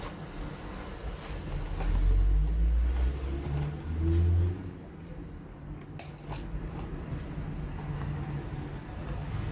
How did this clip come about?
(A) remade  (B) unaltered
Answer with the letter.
B